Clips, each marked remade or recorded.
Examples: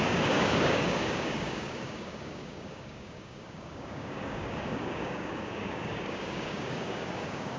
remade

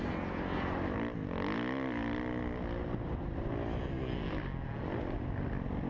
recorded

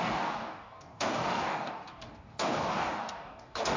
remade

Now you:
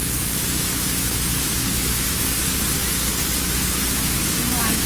remade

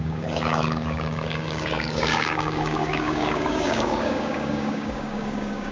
remade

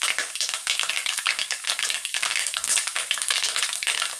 remade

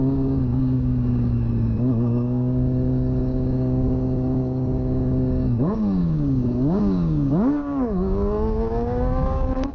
remade